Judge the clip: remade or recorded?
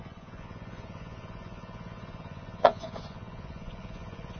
remade